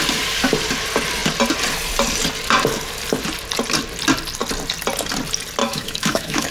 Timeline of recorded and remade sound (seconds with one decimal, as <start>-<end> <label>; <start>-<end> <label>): 0.0-5.6 recorded; 5.6-6.5 remade